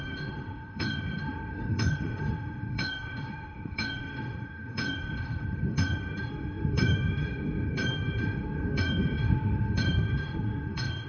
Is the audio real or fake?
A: fake